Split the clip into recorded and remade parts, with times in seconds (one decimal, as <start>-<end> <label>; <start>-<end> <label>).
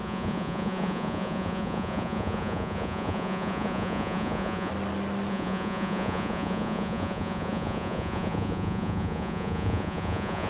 0.0-4.7 remade; 4.7-5.3 recorded; 5.3-10.5 remade